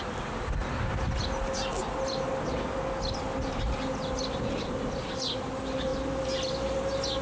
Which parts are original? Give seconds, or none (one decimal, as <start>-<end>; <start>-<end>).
0.0-7.2